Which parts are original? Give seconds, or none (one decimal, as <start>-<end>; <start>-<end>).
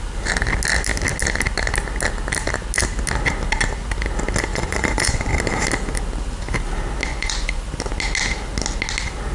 0.0-4.5; 5.3-7.1; 7.6-9.3